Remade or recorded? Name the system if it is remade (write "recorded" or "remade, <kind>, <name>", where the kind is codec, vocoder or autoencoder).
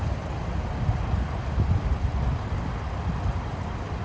recorded